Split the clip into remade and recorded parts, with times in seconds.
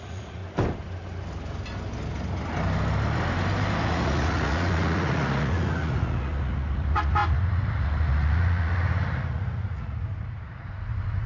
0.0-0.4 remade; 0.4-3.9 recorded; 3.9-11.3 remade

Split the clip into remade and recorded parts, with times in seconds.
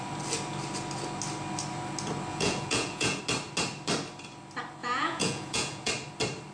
0.0-2.3 recorded; 2.3-3.2 remade; 3.2-4.8 recorded; 4.8-5.9 remade; 5.9-6.5 recorded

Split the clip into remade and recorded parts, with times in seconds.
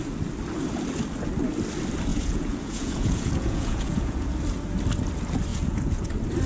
0.0-2.1 recorded; 2.1-4.3 remade; 4.3-5.5 recorded; 5.5-6.1 remade; 6.1-6.5 recorded